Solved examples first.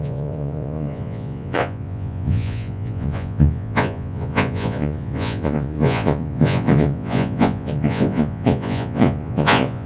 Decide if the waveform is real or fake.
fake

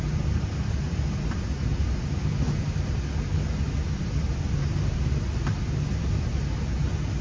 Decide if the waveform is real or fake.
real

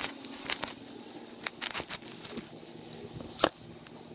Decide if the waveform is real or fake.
real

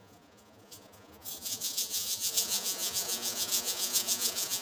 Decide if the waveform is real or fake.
fake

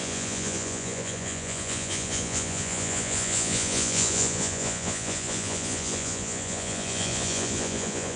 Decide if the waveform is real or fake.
fake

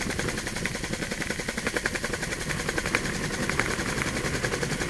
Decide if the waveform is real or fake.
real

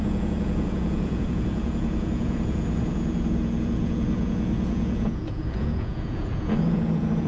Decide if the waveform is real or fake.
fake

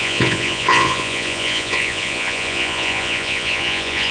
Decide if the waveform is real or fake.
fake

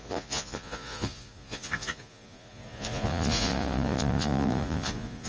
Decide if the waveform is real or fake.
fake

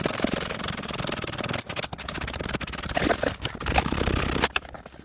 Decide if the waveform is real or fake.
real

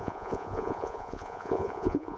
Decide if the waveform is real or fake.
fake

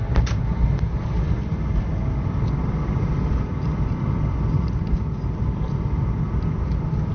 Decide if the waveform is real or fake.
real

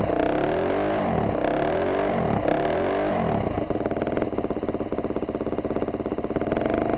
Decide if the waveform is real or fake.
real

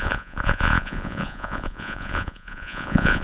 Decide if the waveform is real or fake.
fake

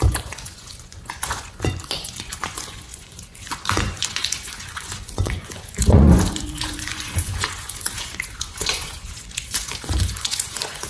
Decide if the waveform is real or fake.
fake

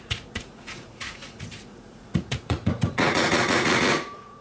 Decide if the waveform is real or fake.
fake